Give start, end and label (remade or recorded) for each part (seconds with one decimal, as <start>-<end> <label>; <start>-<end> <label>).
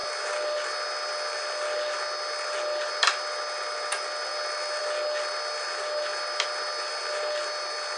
0.0-8.0 recorded